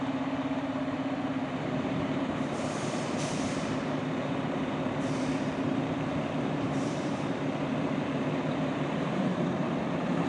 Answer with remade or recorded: remade